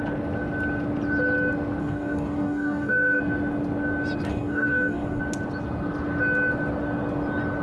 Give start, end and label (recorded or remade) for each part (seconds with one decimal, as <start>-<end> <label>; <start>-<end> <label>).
0.0-1.8 recorded; 1.8-3.2 remade; 3.2-4.3 recorded; 4.3-5.2 remade; 5.2-7.6 recorded